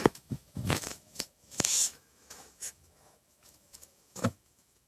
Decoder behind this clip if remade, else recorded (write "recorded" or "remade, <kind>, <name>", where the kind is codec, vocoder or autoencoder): remade, autoencoder, DAC-VAE